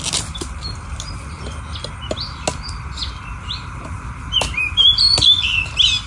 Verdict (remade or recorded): recorded